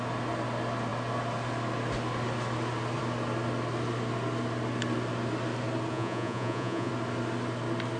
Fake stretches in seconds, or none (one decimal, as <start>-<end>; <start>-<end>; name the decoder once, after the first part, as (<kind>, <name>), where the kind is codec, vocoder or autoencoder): 5.9-6.9 (vocoder, Vocos)